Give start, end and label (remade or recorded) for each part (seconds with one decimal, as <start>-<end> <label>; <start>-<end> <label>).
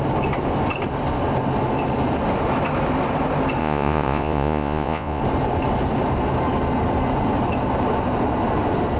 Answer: 0.0-3.6 recorded; 3.6-5.2 remade; 5.2-9.0 recorded